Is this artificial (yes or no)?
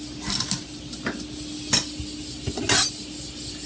no